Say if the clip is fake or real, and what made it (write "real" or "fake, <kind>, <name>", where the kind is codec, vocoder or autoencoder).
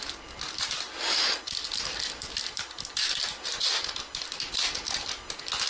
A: real